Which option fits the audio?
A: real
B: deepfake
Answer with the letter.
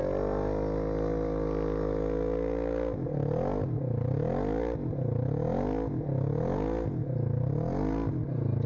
A